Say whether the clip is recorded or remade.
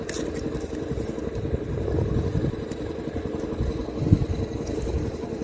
recorded